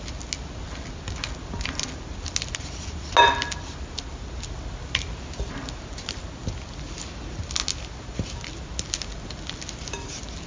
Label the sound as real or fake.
real